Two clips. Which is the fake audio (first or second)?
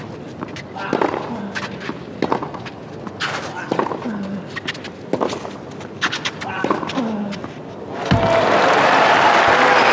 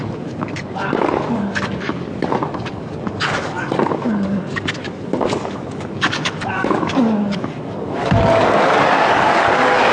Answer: second